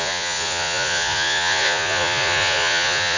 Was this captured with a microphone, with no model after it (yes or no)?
no